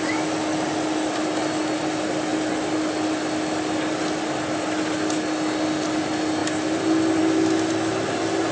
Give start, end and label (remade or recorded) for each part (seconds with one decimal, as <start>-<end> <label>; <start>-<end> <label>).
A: 0.0-8.5 recorded